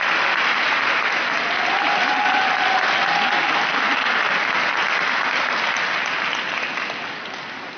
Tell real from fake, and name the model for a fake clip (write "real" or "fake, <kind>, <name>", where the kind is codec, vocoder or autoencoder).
real